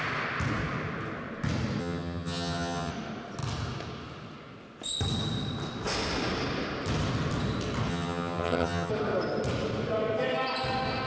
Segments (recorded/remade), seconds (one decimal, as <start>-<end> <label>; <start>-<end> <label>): 0.0-1.8 recorded; 1.8-2.9 remade; 2.9-7.9 recorded; 7.9-8.9 remade; 8.9-11.1 recorded